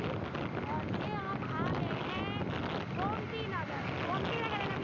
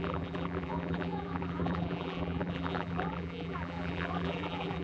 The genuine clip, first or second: first